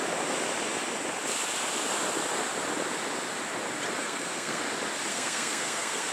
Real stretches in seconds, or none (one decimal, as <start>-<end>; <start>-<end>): 0.0-4.0; 4.6-5.1